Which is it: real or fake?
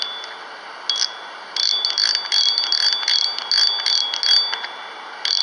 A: real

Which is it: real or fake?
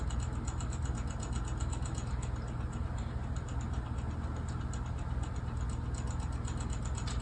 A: real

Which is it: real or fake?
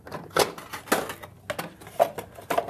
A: real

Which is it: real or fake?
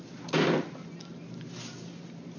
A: real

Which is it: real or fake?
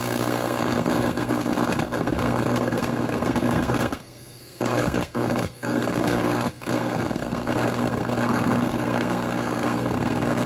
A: fake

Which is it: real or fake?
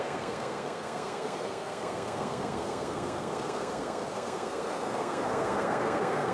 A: fake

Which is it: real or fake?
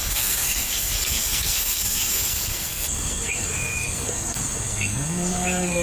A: fake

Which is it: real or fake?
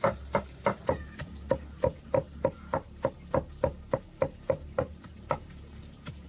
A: real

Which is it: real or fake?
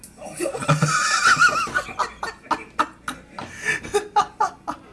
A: real